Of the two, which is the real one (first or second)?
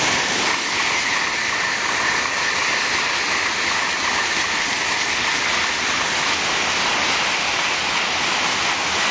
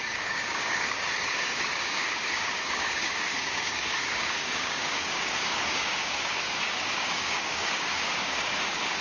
first